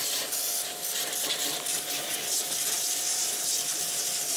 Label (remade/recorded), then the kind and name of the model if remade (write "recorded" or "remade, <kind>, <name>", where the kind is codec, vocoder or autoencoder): remade, vocoder, BigVGAN v2